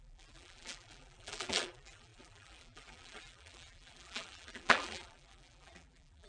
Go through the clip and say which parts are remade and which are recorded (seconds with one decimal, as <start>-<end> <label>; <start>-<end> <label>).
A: 0.0-6.3 remade